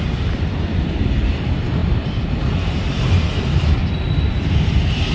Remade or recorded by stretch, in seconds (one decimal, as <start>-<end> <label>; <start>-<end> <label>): 0.0-3.8 recorded; 3.8-5.1 remade